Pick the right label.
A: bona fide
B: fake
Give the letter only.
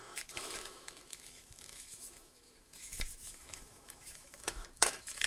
B